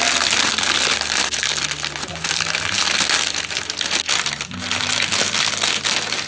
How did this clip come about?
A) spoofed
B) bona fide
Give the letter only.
B